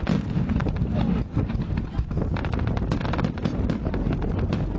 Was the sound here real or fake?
real